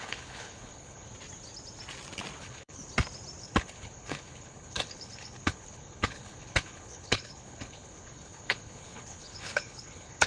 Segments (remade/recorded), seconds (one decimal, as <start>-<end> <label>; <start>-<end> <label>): 0.0-1.1 remade; 1.1-2.4 recorded; 2.4-2.8 remade; 2.8-3.4 recorded; 3.4-10.3 remade

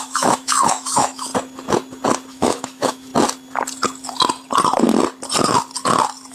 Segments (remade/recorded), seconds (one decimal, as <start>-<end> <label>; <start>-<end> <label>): 0.0-1.3 remade; 1.3-2.3 recorded; 2.3-3.1 remade; 3.1-6.3 recorded